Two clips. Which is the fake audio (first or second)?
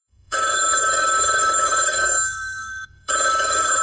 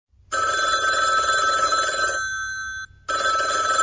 first